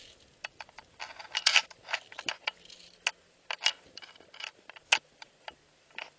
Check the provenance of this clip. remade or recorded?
recorded